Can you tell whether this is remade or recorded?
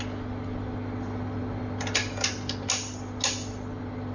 recorded